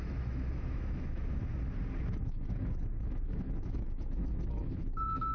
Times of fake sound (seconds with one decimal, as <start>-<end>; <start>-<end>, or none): 0.0-1.4; 2.2-5.3